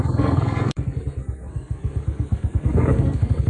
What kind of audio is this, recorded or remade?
remade